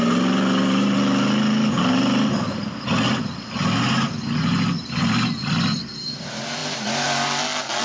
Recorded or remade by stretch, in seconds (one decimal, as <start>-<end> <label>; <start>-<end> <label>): 0.0-7.8 recorded